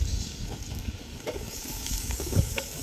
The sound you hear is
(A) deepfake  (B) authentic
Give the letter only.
A